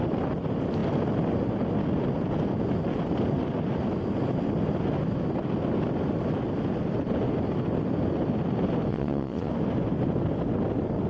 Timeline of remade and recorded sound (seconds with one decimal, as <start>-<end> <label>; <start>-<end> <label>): 0.0-8.9 recorded; 8.9-9.5 remade; 9.5-11.1 recorded